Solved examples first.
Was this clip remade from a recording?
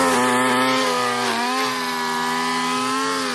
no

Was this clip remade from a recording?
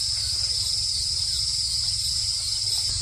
no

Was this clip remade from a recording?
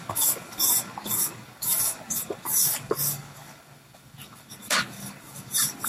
yes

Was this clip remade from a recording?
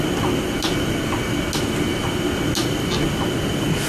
no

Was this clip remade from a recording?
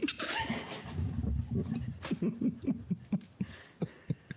no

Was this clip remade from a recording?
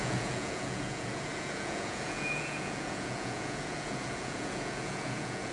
yes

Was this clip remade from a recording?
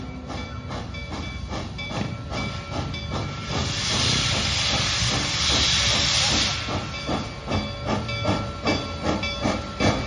no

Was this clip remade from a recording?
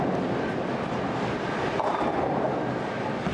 no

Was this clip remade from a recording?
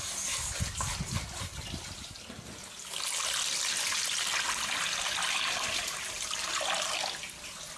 no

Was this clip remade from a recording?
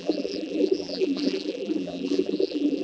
yes